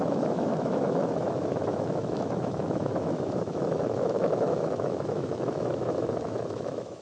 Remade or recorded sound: remade